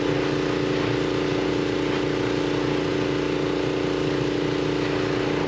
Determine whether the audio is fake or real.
real